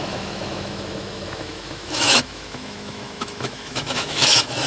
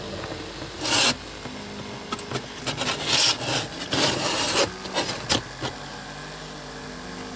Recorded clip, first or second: second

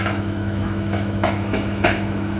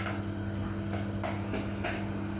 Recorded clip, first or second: second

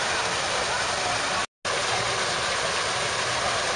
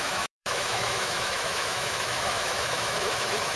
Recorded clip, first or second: first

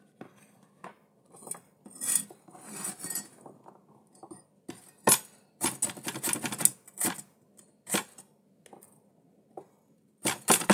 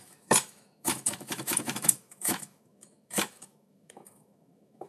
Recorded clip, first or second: first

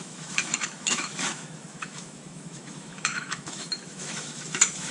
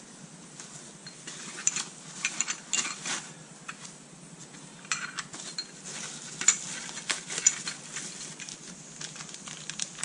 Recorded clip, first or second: second